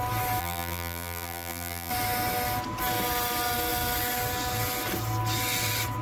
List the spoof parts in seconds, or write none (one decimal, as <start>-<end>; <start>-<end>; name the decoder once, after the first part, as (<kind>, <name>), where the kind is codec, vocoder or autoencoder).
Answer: 0.4-1.9 (vocoder, BigVGAN v2)